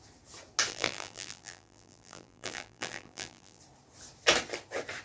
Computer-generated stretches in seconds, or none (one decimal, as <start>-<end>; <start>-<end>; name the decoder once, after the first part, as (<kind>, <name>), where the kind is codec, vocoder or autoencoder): 0.7-3.6 (vocoder, BigVGAN v2)